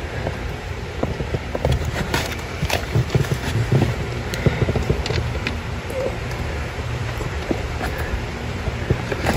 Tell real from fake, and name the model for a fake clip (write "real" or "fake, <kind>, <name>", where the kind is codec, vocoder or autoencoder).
fake, vocoder, BigVGAN v2